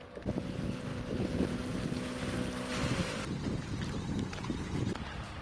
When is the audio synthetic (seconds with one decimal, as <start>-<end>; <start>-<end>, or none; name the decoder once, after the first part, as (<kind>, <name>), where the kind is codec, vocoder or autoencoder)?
none